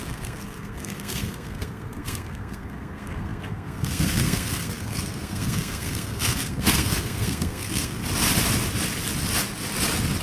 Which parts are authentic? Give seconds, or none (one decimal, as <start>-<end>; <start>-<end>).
8.0-10.2